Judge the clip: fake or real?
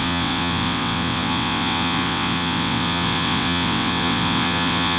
fake